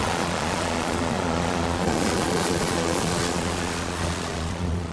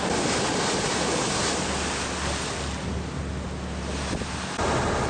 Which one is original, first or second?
second